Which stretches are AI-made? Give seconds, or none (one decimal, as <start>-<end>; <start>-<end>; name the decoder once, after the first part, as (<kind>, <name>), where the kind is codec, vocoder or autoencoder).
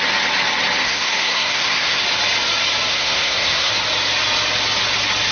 0.8-2.0 (codec, SNAC); 2.9-3.7